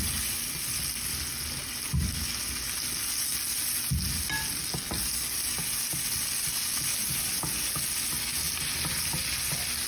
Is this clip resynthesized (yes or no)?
no